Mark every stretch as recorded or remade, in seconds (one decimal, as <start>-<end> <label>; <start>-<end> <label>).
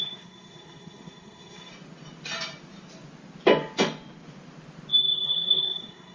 0.0-1.7 remade; 1.7-5.0 recorded; 5.0-6.1 remade